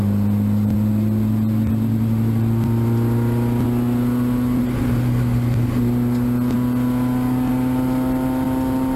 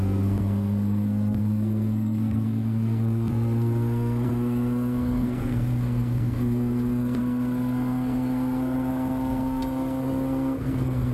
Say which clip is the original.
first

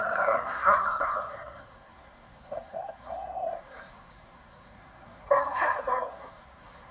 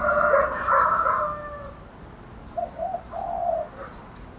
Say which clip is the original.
second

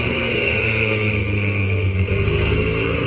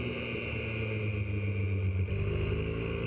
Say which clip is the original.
second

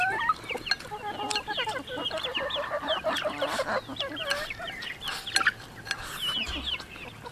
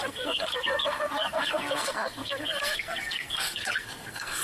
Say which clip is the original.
first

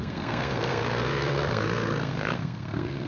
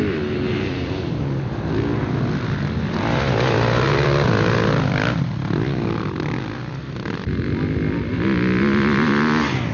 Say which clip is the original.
second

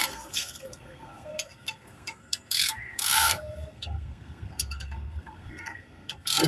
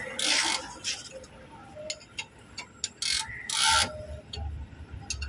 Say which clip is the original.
second